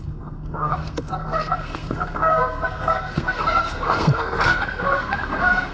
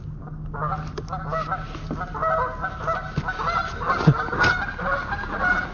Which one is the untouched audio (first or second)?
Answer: second